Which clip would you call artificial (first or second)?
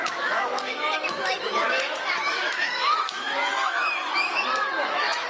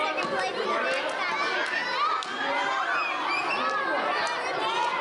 first